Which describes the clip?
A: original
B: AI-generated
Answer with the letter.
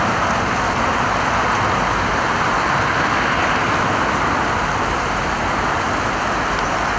A